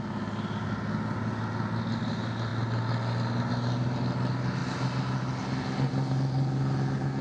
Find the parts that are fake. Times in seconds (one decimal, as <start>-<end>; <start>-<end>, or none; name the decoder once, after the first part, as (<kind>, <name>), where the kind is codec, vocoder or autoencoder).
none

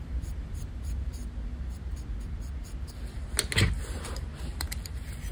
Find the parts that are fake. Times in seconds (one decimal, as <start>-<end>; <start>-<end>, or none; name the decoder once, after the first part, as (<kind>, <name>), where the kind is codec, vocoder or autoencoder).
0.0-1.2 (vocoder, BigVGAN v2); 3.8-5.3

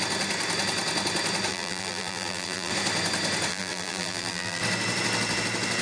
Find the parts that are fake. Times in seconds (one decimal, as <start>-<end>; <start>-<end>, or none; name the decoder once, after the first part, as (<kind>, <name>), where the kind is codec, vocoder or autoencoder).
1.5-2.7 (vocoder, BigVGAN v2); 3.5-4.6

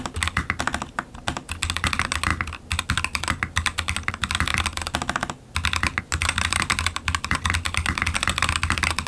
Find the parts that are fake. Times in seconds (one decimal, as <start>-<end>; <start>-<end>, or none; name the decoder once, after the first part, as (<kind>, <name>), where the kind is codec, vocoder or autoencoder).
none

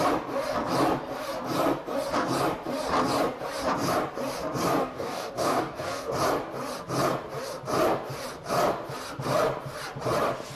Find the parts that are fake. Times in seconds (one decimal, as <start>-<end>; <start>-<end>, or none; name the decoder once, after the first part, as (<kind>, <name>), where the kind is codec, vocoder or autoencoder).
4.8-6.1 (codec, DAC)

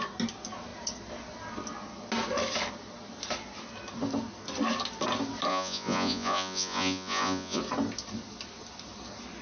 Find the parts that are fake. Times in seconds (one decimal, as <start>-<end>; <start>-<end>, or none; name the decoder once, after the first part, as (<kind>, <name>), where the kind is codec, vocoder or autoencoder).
5.5-7.6 (vocoder, Vocos)